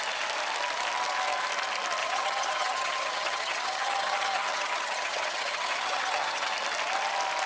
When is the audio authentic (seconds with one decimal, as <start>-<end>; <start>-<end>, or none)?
0.0-2.0; 6.5-7.5